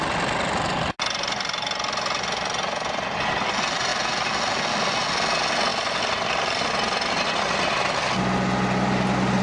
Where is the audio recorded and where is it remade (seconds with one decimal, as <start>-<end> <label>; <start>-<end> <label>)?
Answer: 0.0-3.9 recorded; 3.9-4.9 remade; 4.9-9.4 recorded